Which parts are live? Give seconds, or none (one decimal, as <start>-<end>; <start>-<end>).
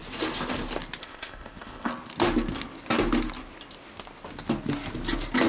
0.0-1.0; 1.9-5.5